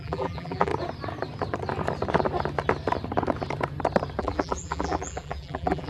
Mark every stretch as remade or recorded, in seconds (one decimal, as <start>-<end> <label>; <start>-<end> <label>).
0.0-0.7 remade; 0.7-4.2 recorded; 4.2-5.9 remade